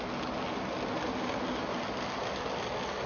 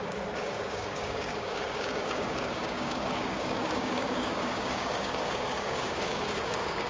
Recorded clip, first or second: first